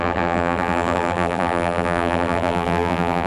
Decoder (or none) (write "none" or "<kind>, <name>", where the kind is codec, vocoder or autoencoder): vocoder, BigVGAN v2